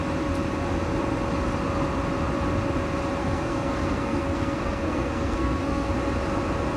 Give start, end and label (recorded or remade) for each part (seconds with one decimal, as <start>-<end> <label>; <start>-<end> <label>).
0.0-3.2 recorded; 3.2-5.9 remade; 5.9-6.8 recorded